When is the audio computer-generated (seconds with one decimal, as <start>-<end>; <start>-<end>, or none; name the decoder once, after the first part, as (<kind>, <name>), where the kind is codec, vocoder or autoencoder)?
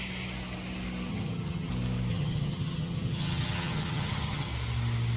1.1-1.7 (vocoder, HiFi-GAN); 2.1-4.5